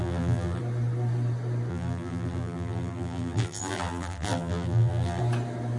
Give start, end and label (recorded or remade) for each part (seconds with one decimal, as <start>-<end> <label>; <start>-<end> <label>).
0.0-0.6 remade; 0.6-1.7 recorded; 1.7-5.2 remade; 5.2-5.8 recorded